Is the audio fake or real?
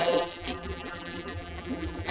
fake